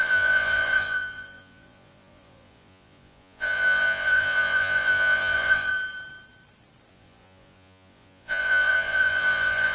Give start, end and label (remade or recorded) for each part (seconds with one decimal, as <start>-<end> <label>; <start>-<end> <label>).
0.0-5.7 remade; 5.7-6.9 recorded; 6.9-9.7 remade